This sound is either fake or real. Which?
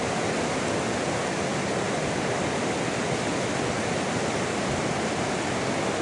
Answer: real